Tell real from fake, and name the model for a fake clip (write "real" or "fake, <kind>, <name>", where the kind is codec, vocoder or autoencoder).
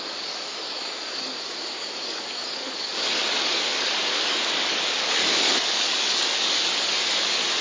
fake, codec, DAC